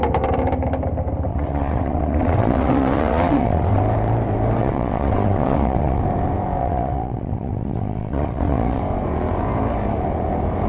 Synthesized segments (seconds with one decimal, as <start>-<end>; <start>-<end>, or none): 1.3-3.8; 4.6-6.0; 6.6-8.8